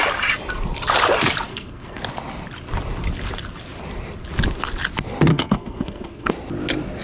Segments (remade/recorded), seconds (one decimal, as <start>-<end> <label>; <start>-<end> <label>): 0.0-1.5 recorded; 1.5-2.0 remade; 2.0-5.3 recorded; 5.3-6.3 remade; 6.3-7.0 recorded

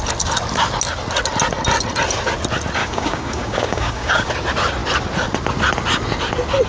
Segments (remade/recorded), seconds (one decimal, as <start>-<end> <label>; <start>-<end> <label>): 0.0-2.8 recorded; 2.8-4.3 remade; 4.3-6.7 recorded

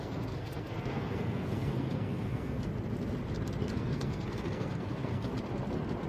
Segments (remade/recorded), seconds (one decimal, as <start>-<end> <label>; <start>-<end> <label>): 0.0-2.7 remade; 2.7-3.6 recorded; 3.6-5.3 remade; 5.3-6.1 recorded

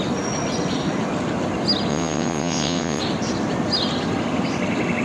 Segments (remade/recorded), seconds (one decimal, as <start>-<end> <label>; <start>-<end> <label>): 0.0-1.9 recorded; 1.9-3.0 remade; 3.0-5.0 recorded

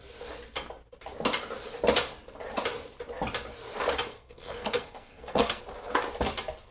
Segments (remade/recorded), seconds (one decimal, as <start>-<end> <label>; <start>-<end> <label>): 0.0-4.1 recorded; 4.1-5.6 remade; 5.6-6.7 recorded